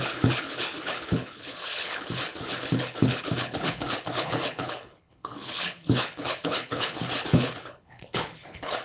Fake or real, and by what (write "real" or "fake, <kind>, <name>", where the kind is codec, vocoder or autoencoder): fake, codec, HILCodec